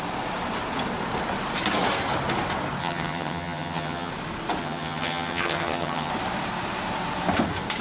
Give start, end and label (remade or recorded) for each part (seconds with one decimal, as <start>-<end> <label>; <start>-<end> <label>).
0.0-2.8 recorded; 2.8-4.1 remade; 4.1-4.6 recorded; 4.6-6.1 remade; 6.1-7.8 recorded